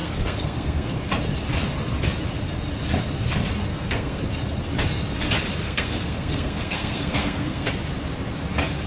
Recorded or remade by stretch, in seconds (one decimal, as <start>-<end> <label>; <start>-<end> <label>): 0.0-0.9 remade; 0.9-3.7 recorded; 3.7-4.2 remade; 4.2-5.6 recorded; 5.6-7.7 remade; 7.7-8.9 recorded